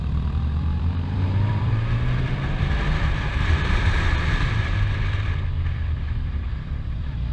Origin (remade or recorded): remade